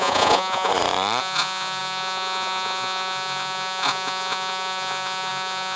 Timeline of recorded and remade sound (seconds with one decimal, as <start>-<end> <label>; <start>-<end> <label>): 0.0-0.7 remade; 0.7-1.2 recorded; 1.2-5.8 remade